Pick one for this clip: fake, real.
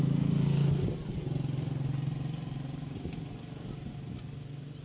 real